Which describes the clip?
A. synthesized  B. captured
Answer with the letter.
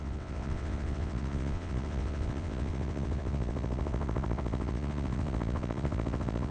A